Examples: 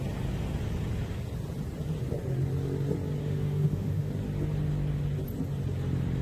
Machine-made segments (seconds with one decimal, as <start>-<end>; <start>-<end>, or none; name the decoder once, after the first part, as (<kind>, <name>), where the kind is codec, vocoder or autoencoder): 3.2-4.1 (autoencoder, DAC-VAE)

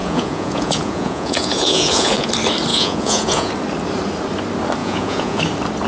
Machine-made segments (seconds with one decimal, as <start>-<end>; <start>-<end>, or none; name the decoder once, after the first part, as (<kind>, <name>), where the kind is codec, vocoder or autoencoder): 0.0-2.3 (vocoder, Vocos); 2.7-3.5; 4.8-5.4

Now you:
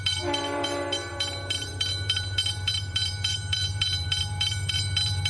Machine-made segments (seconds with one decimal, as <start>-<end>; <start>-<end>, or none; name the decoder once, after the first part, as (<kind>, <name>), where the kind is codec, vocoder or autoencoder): 0.0-5.3 (vocoder, BigVGAN v2)

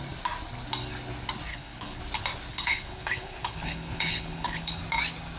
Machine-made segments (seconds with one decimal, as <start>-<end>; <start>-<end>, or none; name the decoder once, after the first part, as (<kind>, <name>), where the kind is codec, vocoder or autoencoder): 1.5-2.0 (codec, HILCodec); 2.5-4.8

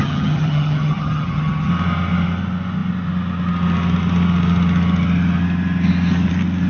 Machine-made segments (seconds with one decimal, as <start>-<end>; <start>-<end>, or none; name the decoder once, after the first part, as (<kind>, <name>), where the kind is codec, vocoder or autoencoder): 0.0-1.7 (vocoder, HiFi-GAN)